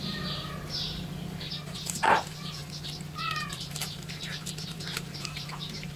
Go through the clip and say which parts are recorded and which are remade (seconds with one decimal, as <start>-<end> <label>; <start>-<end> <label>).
0.0-2.6 remade; 2.6-3.4 recorded; 3.4-6.0 remade